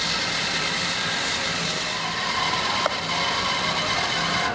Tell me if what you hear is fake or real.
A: real